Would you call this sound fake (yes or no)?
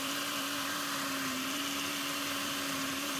yes